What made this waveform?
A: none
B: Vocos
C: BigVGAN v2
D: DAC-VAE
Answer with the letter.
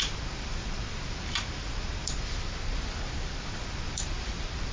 A